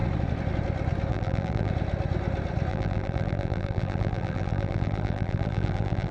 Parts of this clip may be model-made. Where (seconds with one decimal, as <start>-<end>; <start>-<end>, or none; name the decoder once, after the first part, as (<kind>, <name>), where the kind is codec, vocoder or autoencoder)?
1.1-1.7 (vocoder, BigVGAN v2); 2.7-6.1